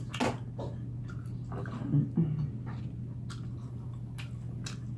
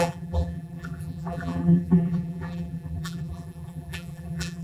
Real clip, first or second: first